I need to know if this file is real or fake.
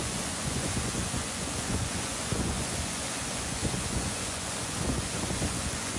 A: fake